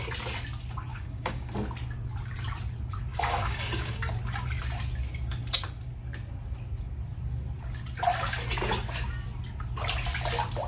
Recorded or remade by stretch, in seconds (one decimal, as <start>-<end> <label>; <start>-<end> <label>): 0.0-0.9 recorded; 0.9-1.5 remade; 1.5-3.1 recorded; 3.1-4.1 remade; 4.1-10.7 recorded